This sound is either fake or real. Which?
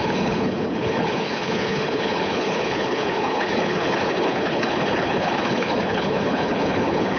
fake